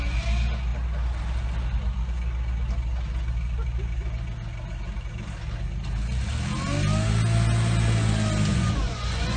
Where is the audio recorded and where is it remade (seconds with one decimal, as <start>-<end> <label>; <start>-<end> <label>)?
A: 0.0-8.5 recorded; 8.5-9.4 remade